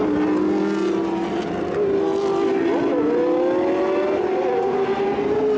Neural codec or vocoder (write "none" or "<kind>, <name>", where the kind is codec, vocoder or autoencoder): none